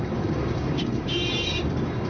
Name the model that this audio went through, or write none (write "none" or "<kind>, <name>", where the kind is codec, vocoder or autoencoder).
codec, DAC